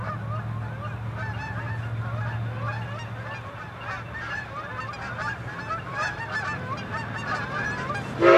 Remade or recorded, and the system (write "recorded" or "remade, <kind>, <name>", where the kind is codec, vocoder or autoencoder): recorded